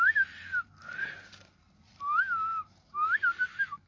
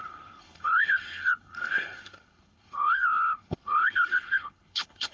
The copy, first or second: second